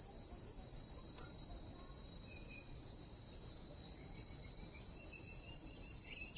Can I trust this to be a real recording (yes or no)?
yes